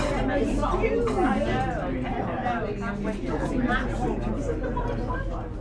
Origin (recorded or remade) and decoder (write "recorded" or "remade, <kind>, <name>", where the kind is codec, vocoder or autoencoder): recorded